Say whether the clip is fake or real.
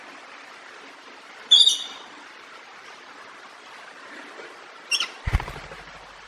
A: real